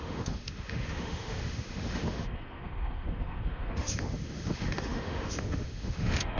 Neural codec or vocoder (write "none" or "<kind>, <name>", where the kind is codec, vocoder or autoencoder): autoencoder, DAC-VAE